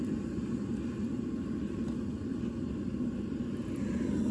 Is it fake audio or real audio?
real